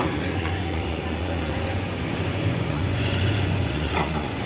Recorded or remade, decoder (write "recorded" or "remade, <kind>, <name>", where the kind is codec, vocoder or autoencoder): remade, vocoder, Vocos